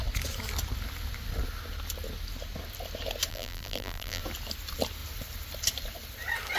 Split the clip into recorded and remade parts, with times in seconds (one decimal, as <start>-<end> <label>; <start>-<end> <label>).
0.0-3.3 recorded; 3.3-4.2 remade; 4.2-6.6 recorded